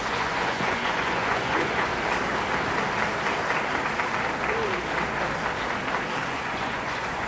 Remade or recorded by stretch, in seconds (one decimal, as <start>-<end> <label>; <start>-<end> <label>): 0.0-1.9 remade; 1.9-6.3 recorded; 6.3-7.3 remade